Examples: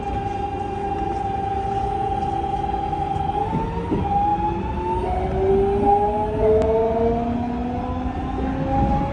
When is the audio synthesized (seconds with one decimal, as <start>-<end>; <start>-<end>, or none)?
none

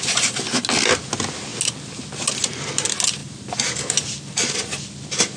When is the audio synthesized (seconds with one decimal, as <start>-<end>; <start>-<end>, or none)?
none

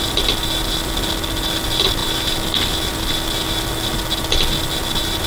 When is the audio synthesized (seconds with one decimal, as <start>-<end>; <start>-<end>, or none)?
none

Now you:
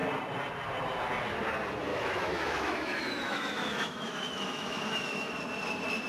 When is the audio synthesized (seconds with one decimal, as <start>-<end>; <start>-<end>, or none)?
1.9-5.3

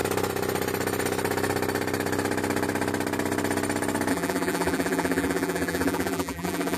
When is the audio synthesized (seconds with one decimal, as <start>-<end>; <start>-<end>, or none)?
4.1-6.8

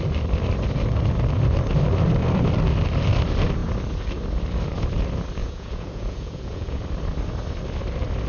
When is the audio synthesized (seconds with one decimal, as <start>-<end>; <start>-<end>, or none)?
5.4-6.8

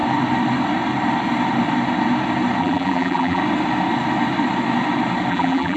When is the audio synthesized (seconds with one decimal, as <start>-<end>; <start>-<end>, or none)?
2.6-3.4; 5.3-5.8